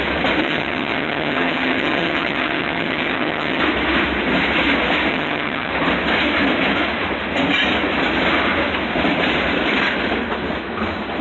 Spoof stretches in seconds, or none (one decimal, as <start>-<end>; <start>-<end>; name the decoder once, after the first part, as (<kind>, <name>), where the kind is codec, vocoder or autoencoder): 0.4-3.6 (vocoder, HiFi-GAN); 5.1-5.7

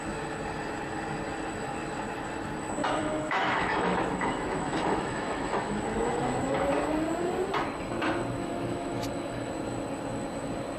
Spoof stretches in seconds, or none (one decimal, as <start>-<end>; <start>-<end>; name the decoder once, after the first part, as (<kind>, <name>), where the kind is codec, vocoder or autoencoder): 3.0-5.8 (autoencoder, DAC-VAE); 8.4-9.5

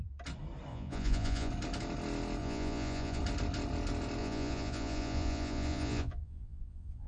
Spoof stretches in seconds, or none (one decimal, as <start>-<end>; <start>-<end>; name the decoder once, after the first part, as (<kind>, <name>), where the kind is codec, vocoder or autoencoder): 0.7-1.5 (vocoder, Vocos); 2.4-3.2; 4.2-7.1

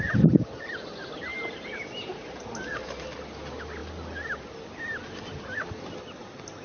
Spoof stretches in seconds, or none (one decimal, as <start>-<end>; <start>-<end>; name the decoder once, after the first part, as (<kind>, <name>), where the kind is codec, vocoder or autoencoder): 1.3-2.5 (vocoder, BigVGAN v2)